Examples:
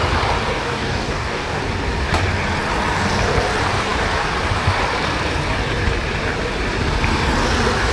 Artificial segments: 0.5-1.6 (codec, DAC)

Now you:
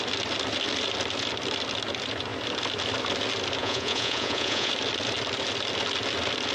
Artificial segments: 3.6-4.7 (vocoder, Vocos)

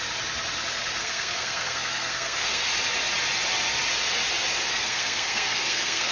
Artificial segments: 1.0-2.6 (codec, SNAC); 4.7-6.1

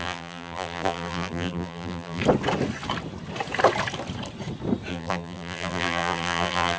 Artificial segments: 0.0-2.2 (vocoder, BigVGAN v2); 4.9-6.8

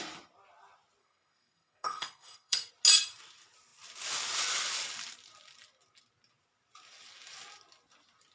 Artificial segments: 1.0-2.7 (codec, SNAC)

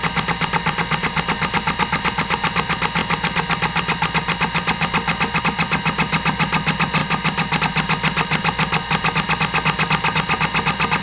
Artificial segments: none

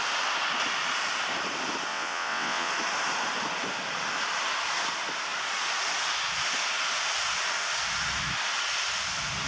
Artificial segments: 1.9-2.7 (vocoder, WaveNeXt)